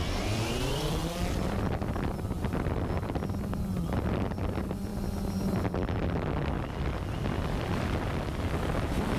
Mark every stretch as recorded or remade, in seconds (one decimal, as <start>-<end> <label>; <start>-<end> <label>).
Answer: 0.0-1.0 remade; 1.0-4.1 recorded; 4.1-4.9 remade; 4.9-7.1 recorded; 7.1-9.2 remade